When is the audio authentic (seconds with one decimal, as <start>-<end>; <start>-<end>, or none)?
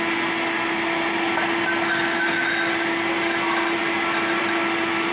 0.0-5.1